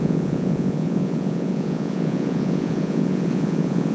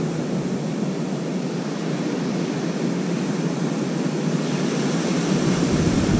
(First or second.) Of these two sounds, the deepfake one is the first